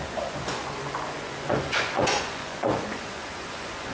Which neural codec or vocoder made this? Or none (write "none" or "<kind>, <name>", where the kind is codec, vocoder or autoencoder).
vocoder, Vocos